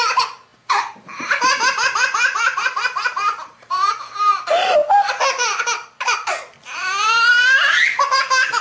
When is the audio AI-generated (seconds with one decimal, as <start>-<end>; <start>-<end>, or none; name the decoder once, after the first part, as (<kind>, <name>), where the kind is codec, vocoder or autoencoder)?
0.5-4.0 (vocoder, BigVGAN v2)